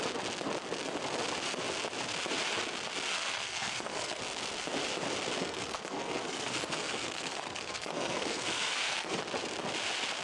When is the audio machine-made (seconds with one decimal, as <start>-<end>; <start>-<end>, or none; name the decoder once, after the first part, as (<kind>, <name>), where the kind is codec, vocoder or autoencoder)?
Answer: 3.1-4.2 (codec, SNAC); 5.4-9.2